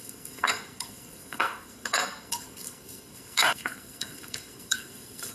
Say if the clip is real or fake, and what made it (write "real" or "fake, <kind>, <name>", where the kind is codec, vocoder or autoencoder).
fake, codec, SNAC